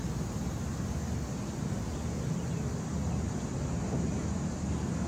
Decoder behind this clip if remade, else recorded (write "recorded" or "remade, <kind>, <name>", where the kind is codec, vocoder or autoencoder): recorded